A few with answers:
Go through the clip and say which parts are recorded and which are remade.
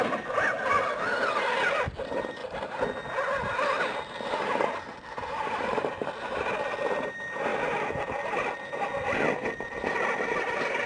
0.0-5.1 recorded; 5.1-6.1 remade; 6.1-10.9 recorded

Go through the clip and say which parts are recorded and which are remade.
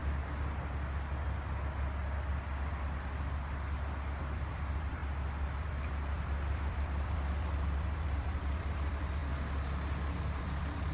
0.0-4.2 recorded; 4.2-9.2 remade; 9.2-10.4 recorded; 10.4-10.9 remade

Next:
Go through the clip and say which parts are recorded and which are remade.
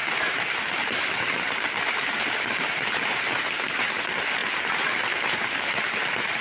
0.0-3.8 remade; 3.8-4.4 recorded; 4.4-6.4 remade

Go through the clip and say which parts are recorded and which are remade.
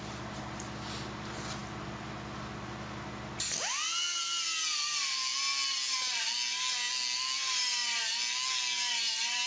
0.0-9.5 recorded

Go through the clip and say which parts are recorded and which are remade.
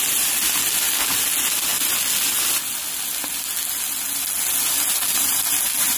0.0-6.0 recorded